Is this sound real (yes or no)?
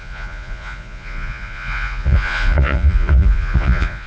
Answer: no